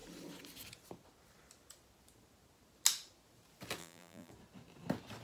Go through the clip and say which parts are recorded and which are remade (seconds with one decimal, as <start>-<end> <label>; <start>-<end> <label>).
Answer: 0.0-3.8 recorded; 3.8-4.3 remade; 4.3-5.2 recorded